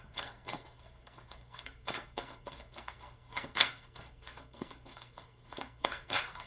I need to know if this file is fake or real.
fake